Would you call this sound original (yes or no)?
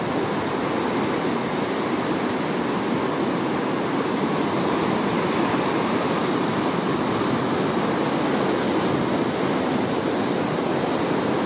yes